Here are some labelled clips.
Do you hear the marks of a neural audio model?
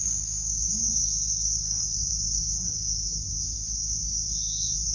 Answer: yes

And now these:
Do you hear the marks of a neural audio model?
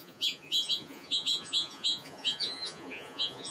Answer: yes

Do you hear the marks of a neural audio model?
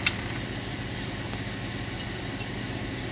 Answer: no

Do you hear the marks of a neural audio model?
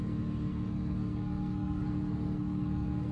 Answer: yes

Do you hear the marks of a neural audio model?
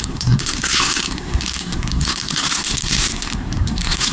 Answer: yes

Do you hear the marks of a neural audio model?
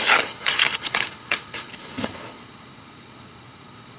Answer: yes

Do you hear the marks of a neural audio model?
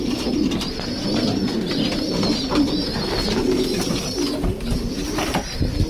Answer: no